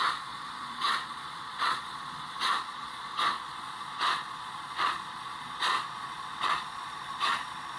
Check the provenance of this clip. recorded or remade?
remade